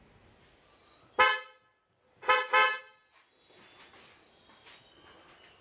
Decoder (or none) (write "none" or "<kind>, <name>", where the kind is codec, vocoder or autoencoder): none